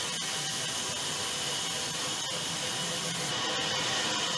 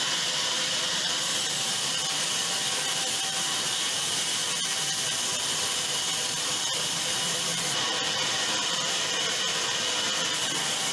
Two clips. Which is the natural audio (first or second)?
first